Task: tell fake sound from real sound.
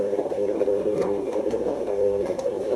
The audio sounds fake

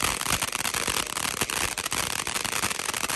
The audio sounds real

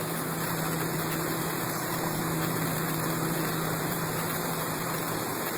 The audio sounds fake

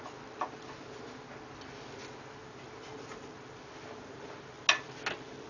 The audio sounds real